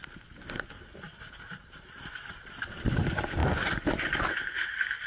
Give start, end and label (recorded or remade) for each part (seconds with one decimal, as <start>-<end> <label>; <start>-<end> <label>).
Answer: 0.0-5.1 recorded